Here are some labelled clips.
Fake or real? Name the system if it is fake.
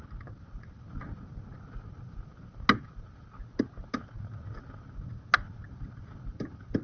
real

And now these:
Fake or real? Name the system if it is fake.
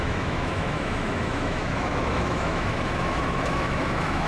fake, autoencoder, DAC-VAE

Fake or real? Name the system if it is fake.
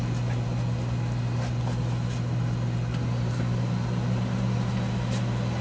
real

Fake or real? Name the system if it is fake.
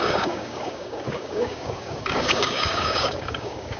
fake, codec, DAC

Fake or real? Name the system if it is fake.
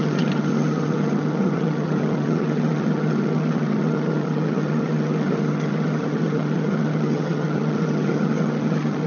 fake, vocoder, HiFi-GAN